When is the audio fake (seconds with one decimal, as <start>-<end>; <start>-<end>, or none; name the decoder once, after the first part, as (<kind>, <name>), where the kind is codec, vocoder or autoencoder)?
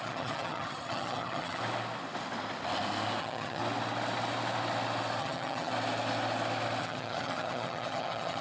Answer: 0.0-1.6 (vocoder, HiFi-GAN); 3.2-3.6; 5.2-5.7; 6.8-8.4